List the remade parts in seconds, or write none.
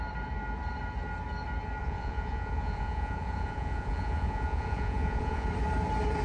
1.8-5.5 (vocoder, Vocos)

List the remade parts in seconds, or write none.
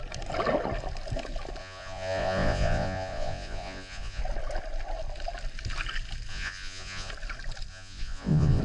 1.6-4.2 (vocoder, Vocos); 6.3-7.1; 7.7-8.6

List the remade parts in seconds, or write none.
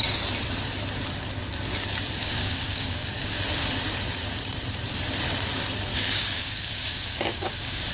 2.2-3.4 (codec, DAC); 5.9-7.9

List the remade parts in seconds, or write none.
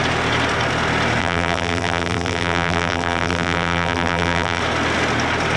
1.2-4.6 (vocoder, BigVGAN v2)